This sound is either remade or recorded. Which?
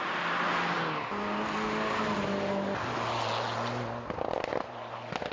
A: recorded